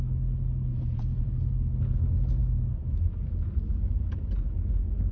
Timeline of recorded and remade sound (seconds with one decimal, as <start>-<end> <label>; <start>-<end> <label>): 0.0-0.7 recorded; 0.7-1.3 remade; 1.3-5.1 recorded